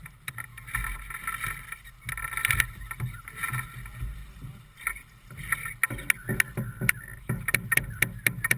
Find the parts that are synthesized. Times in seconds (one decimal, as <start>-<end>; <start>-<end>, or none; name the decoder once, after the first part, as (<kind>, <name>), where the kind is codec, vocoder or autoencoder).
none